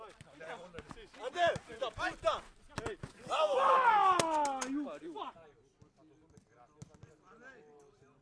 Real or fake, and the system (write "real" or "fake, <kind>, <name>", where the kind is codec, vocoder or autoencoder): real